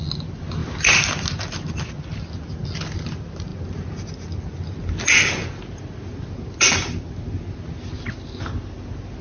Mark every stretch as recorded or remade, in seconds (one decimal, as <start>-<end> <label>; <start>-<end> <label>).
0.0-9.2 recorded